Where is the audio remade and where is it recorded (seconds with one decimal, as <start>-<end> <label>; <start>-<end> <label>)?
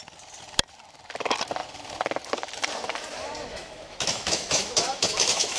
0.0-3.5 recorded; 3.5-5.6 remade